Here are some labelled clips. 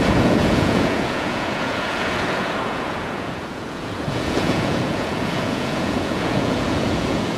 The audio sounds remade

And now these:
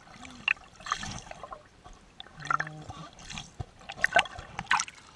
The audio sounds recorded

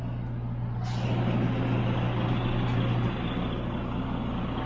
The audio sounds recorded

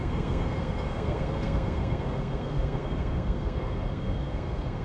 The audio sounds remade